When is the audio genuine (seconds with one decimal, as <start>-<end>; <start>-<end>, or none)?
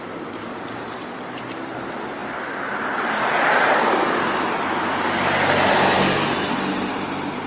0.0-7.5